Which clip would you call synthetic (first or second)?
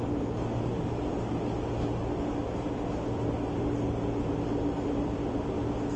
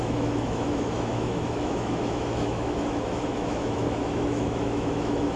second